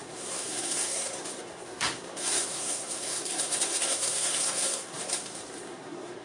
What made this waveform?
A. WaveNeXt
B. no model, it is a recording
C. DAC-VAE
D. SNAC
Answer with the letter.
D